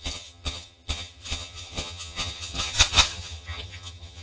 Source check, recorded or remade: remade